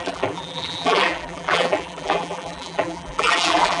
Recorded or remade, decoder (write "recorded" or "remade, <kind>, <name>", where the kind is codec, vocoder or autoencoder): remade, vocoder, BigVGAN v2